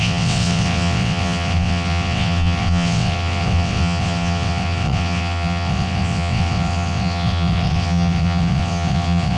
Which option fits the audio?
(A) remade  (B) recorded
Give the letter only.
A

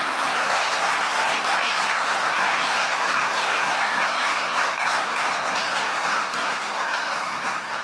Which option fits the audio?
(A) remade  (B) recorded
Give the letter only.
A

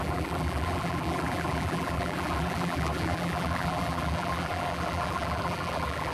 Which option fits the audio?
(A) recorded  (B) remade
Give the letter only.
B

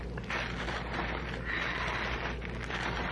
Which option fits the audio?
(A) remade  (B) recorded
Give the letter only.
B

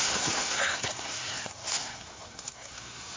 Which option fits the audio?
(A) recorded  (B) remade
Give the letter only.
B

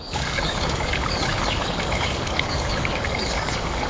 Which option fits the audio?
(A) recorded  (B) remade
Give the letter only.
B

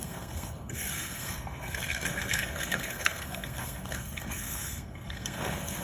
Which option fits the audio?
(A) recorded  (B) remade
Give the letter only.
B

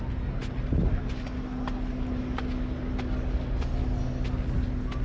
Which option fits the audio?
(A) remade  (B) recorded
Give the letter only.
B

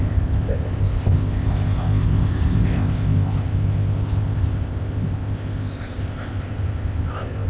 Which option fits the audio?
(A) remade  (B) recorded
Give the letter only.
A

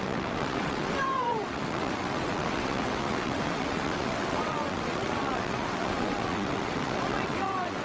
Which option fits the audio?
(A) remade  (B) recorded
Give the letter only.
A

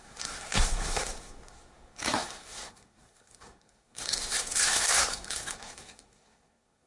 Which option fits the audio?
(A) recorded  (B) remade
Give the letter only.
B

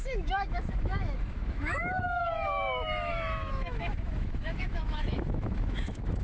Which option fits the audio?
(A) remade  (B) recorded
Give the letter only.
A